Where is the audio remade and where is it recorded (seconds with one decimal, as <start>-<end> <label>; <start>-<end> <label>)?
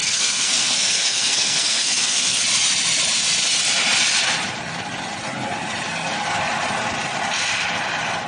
0.0-2.4 remade; 2.4-8.3 recorded